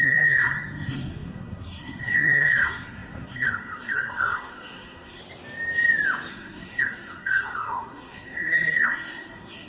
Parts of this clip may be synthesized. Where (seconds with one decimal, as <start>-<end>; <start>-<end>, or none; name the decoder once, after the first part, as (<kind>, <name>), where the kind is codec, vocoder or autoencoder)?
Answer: 0.0-5.2 (codec, SNAC); 6.3-9.7